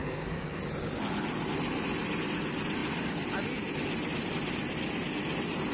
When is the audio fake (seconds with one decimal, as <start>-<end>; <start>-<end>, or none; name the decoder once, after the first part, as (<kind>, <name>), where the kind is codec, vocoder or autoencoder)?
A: 0.0-0.6 (codec, SNAC)